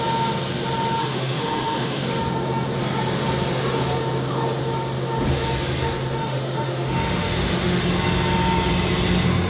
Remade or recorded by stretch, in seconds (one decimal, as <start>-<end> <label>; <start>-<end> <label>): 0.0-1.0 recorded; 1.0-2.0 remade; 2.0-6.2 recorded; 6.2-7.8 remade; 7.8-9.5 recorded